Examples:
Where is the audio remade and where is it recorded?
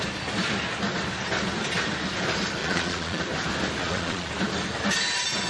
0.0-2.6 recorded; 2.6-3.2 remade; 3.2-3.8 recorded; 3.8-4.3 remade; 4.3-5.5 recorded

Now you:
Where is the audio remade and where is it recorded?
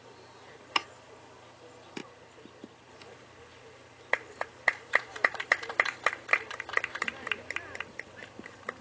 0.0-8.8 recorded